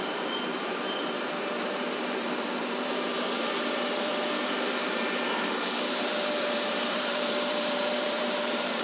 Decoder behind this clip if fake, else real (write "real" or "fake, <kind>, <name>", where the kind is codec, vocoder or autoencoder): fake, vocoder, BigVGAN v2